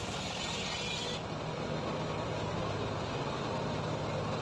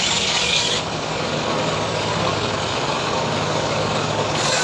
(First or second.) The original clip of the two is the first